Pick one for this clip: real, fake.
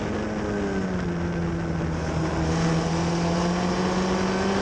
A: real